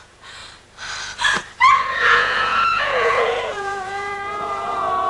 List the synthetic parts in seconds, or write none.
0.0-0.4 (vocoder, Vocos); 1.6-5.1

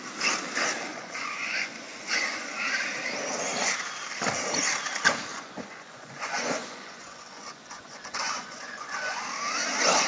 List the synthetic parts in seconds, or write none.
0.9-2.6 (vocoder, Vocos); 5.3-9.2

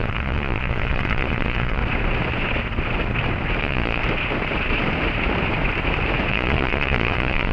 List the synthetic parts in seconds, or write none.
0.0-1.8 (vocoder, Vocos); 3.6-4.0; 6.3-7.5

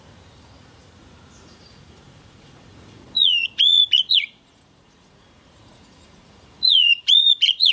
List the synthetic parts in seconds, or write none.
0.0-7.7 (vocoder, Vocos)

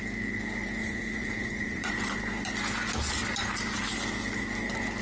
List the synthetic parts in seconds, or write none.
0.8-1.9 (vocoder, Vocos)